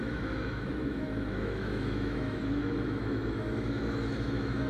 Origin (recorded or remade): remade